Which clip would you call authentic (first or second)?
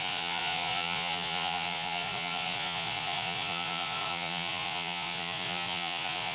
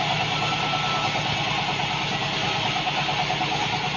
second